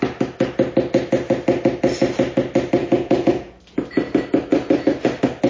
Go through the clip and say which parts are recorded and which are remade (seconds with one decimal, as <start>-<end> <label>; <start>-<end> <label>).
0.0-2.8 recorded; 2.8-3.6 remade; 3.6-5.5 recorded